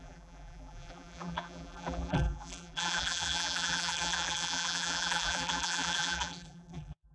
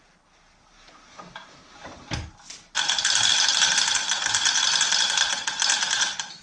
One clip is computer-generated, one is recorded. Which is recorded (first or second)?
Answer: second